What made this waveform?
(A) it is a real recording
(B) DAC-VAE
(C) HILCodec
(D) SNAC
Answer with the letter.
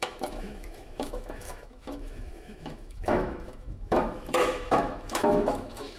B